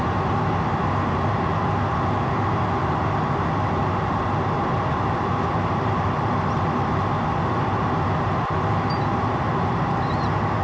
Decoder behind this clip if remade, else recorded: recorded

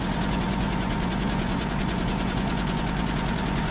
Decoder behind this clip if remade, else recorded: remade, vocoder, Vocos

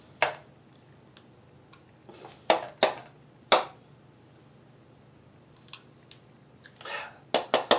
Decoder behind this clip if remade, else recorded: recorded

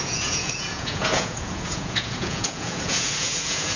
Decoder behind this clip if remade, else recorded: remade, vocoder, Vocos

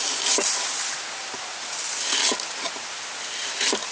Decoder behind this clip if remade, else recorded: recorded